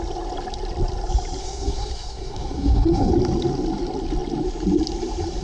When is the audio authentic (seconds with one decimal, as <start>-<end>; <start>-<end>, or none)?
0.0-1.4; 3.1-5.4